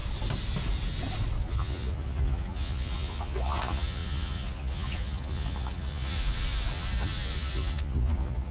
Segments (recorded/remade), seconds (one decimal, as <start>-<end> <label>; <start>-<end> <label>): 0.0-1.4 recorded; 1.4-8.5 remade